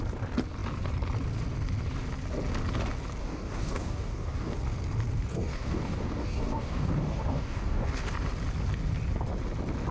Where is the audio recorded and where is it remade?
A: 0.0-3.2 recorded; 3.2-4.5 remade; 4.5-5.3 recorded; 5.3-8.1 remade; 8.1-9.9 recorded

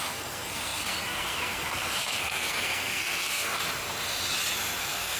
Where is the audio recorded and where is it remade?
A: 0.0-3.6 remade; 3.6-4.8 recorded; 4.8-5.2 remade

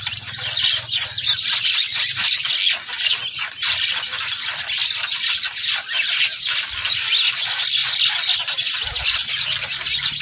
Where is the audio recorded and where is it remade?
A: 0.0-10.2 recorded

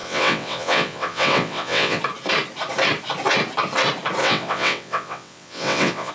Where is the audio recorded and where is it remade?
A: 0.0-2.0 remade; 2.0-4.2 recorded; 4.2-6.1 remade

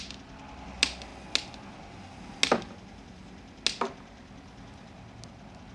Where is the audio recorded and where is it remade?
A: 0.0-5.7 recorded

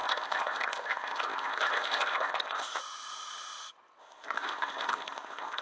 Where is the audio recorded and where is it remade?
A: 0.0-2.8 remade; 2.8-4.0 recorded; 4.0-5.6 remade

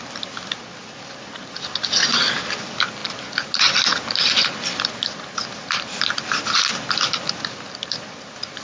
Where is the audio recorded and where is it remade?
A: 0.0-8.6 recorded